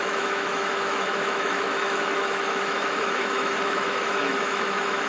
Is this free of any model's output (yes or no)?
no